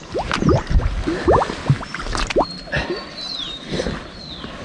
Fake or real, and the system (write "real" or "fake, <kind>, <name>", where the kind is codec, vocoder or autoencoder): real